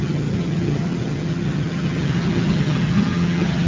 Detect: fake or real fake